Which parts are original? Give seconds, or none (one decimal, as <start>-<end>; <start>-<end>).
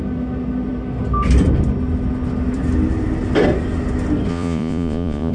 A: 0.0-4.3